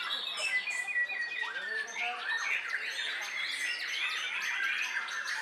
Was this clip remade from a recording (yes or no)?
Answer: no